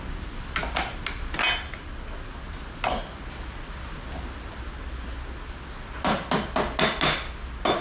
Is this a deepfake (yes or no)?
no